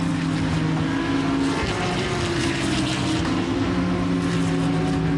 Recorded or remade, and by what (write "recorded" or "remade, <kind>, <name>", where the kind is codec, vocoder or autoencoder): recorded